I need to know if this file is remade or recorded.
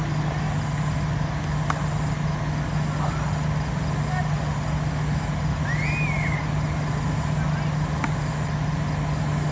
recorded